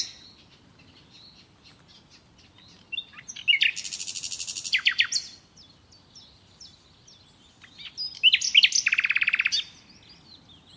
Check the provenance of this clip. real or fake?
real